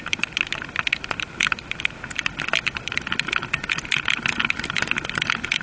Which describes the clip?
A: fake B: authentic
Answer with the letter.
B